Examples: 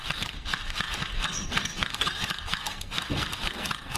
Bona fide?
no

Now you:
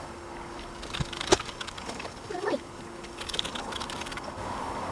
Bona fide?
no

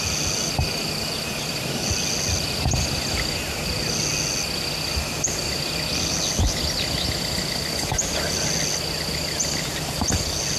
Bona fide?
yes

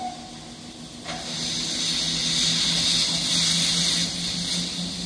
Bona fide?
yes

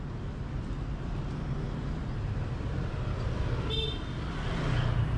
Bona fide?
yes